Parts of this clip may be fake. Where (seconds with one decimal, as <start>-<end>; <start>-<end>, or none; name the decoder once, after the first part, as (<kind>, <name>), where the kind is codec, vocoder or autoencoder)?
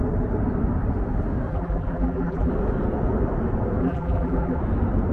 1.5-2.5 (vocoder, BigVGAN v2); 3.8-4.6